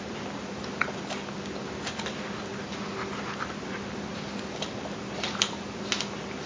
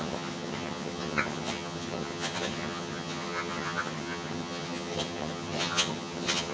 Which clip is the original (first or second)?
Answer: first